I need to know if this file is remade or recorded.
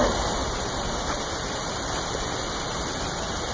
recorded